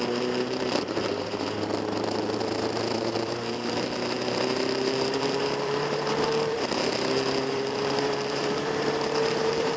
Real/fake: fake